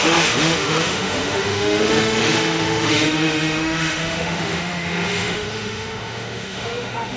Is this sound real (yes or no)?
no